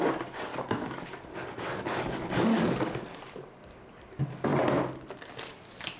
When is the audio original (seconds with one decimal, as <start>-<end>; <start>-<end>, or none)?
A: 0.0-0.5; 3.2-6.0